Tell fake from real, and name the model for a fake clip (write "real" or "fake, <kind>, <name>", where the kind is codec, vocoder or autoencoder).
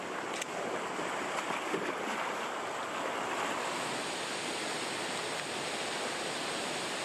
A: real